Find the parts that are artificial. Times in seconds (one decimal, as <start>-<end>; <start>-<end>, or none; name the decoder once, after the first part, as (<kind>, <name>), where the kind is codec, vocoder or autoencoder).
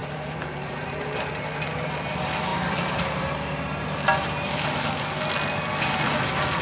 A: 0.0-1.3 (vocoder, BigVGAN v2); 2.5-4.2